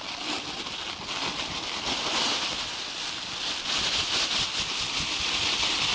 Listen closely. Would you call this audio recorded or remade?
recorded